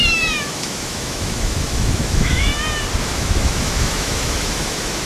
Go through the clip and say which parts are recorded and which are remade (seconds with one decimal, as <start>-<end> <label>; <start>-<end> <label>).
0.0-2.5 remade; 2.5-3.0 recorded; 3.0-5.1 remade